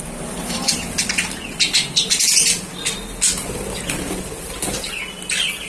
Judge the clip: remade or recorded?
recorded